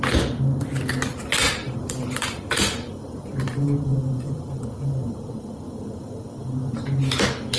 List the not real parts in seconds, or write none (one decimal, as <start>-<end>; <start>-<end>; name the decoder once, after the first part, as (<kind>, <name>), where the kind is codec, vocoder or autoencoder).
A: 1.1-3.3 (vocoder, BigVGAN v2); 3.9-6.4